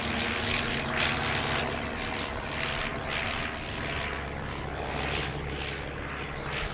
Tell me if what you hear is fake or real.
real